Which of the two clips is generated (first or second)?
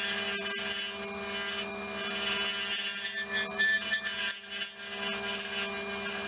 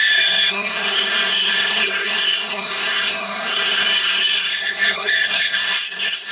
second